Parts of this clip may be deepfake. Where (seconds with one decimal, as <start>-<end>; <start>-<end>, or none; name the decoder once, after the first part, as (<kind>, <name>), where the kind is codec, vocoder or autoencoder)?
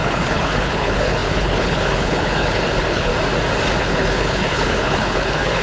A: 0.0-3.1 (codec, HILCodec); 3.8-5.6